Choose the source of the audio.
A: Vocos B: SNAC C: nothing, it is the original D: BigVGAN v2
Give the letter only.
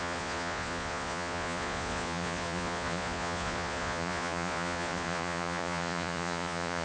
A